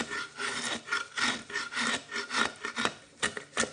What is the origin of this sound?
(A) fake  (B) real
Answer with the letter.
B